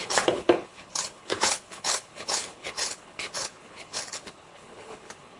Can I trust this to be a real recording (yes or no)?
no